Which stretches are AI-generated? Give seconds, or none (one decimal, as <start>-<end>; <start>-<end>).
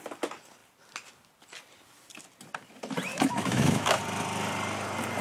3.1-4.0